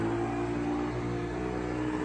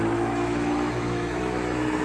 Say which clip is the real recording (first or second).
first